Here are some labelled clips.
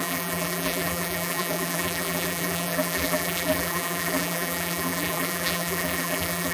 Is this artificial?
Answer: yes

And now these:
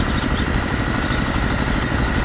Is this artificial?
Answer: yes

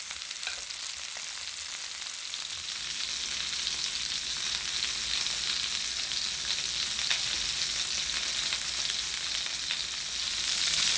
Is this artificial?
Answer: no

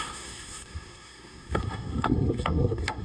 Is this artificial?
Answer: yes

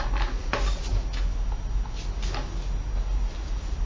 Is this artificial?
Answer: no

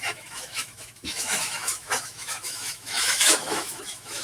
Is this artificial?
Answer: yes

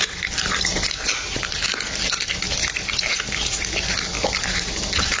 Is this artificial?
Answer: no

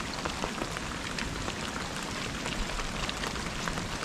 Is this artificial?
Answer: no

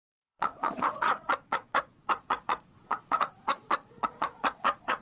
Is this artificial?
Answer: yes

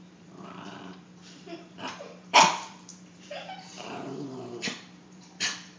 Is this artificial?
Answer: yes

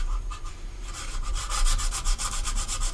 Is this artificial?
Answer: yes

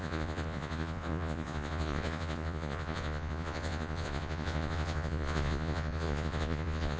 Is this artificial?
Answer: yes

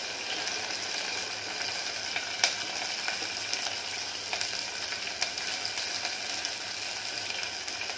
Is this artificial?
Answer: no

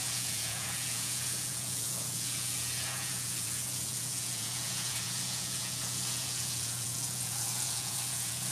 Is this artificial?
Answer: yes